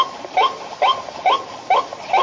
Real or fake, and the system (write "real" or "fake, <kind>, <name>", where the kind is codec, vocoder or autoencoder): real